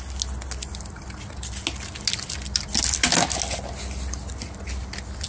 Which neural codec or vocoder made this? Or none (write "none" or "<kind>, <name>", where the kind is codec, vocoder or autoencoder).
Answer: none